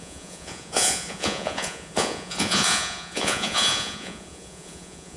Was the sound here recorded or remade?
remade